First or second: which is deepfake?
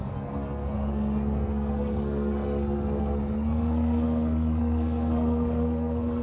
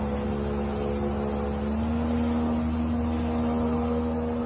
first